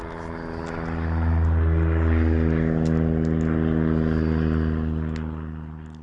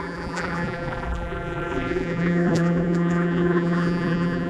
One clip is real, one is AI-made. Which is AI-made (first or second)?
second